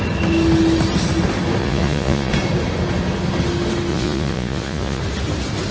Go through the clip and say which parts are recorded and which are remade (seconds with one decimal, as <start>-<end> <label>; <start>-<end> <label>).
0.0-1.6 recorded; 1.6-2.3 remade; 2.3-3.9 recorded; 3.9-5.0 remade; 5.0-5.7 recorded